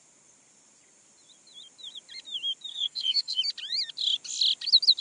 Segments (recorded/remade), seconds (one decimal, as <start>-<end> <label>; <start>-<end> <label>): 0.0-2.7 recorded; 2.7-3.4 remade; 3.4-5.0 recorded